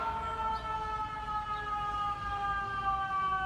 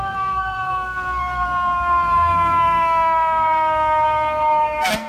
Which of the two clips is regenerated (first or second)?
second